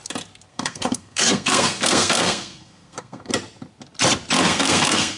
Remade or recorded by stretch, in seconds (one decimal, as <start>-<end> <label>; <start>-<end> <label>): 0.0-0.5 recorded; 0.5-3.3 remade; 3.3-4.5 recorded; 4.5-5.2 remade